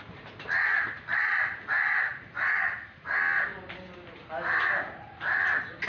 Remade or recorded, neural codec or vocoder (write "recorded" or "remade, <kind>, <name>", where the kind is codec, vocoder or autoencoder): recorded